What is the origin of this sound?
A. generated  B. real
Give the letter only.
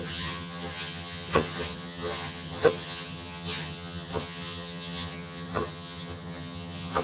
A